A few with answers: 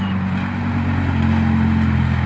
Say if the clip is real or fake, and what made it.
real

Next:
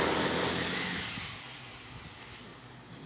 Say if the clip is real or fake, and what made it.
real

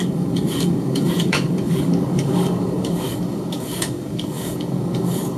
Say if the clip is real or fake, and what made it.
fake, codec, DAC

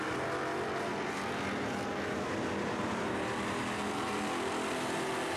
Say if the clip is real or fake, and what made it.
real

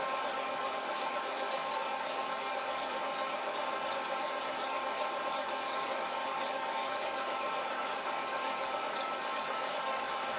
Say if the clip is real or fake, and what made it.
fake, codec, DAC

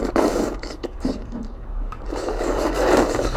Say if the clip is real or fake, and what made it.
fake, codec, DAC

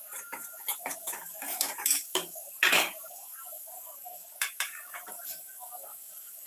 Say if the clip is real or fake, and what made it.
fake, codec, DAC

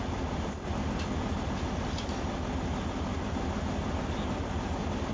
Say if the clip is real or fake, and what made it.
real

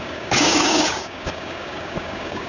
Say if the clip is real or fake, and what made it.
fake, codec, DAC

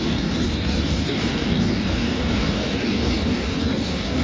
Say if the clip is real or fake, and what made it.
fake, codec, DAC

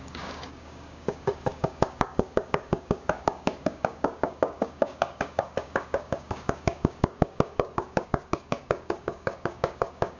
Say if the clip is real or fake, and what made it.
fake, codec, DAC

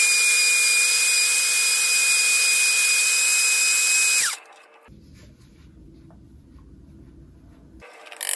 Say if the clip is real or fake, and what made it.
real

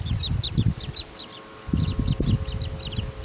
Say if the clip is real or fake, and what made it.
real